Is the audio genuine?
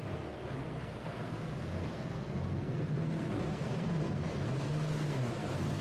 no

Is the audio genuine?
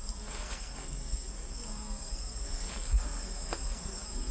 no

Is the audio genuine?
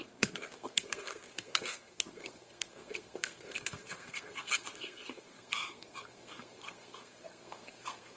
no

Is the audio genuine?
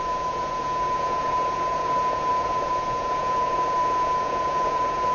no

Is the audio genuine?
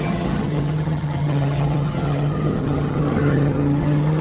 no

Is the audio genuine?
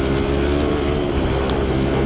yes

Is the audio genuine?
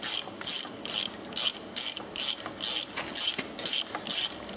yes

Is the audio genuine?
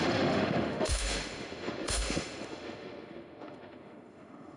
no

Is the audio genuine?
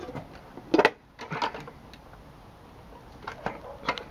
yes